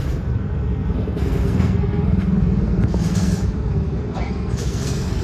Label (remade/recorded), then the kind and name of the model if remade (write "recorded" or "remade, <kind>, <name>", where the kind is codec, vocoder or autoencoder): remade, codec, SNAC